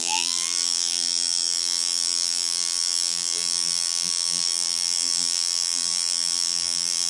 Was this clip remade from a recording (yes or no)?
yes